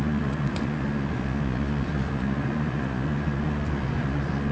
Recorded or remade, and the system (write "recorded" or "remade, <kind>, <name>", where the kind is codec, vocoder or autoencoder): remade, vocoder, Vocos